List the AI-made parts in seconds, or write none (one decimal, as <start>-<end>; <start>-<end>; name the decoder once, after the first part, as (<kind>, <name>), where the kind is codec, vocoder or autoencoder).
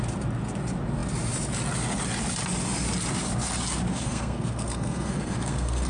3.9-5.9 (codec, SNAC)